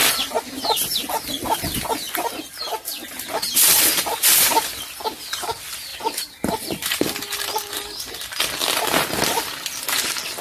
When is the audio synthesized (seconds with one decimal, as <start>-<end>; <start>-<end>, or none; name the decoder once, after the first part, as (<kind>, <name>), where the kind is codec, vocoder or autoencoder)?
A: none